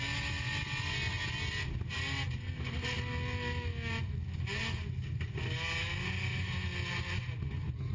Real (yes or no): yes